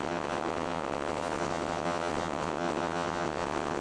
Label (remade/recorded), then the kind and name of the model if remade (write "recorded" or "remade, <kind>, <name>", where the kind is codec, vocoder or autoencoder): remade, vocoder, WaveNeXt